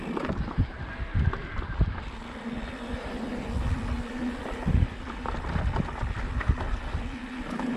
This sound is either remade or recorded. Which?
remade